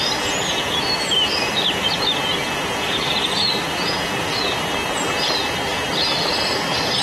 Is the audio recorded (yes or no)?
yes